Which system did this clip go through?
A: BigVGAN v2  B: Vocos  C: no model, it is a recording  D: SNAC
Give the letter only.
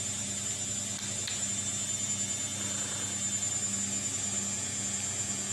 C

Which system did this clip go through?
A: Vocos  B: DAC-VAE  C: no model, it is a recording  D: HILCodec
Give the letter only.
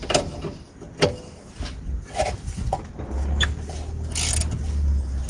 C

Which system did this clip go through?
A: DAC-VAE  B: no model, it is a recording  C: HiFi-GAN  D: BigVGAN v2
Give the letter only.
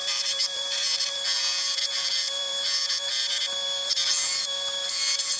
D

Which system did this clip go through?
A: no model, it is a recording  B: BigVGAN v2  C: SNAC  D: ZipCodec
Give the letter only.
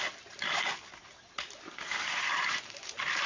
A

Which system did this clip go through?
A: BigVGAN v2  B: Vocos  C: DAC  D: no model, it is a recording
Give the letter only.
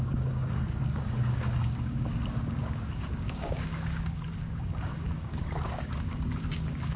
C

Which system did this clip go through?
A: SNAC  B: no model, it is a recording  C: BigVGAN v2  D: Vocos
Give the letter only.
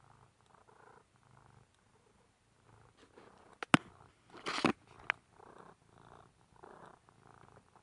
B